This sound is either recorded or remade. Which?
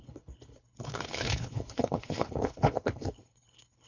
remade